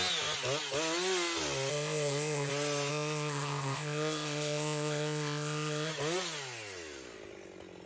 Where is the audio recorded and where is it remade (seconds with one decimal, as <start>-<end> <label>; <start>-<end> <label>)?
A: 0.0-1.7 recorded; 1.7-2.5 remade; 2.5-2.9 recorded; 2.9-5.9 remade; 5.9-7.9 recorded